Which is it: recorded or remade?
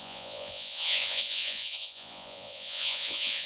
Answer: remade